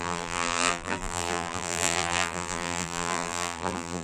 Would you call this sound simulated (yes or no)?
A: yes